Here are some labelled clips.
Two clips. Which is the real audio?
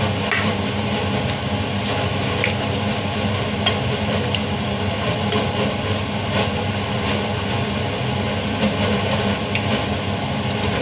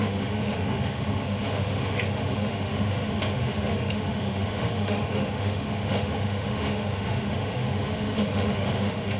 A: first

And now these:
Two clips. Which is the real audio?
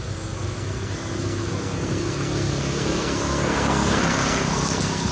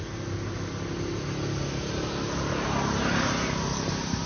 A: second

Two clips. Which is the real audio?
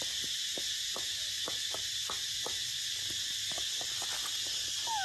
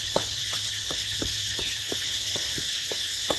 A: first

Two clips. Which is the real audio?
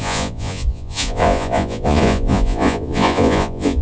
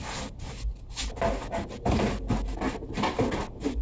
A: second